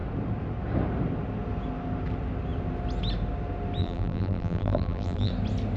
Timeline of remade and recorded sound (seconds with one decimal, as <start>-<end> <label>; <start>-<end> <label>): 0.0-3.8 recorded; 3.8-5.3 remade; 5.3-5.8 recorded